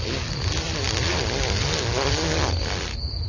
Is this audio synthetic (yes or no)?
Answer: no